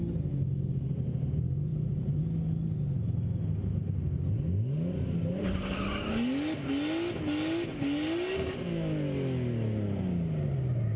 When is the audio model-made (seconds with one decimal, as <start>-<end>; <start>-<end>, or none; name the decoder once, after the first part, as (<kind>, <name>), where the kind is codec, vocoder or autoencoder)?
1.7-2.2 (vocoder, BigVGAN v2)